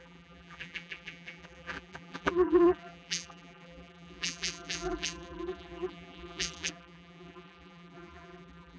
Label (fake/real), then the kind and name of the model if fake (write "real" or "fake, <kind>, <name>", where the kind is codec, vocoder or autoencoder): fake, vocoder, BigVGAN v2